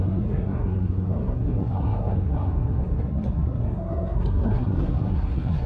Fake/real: fake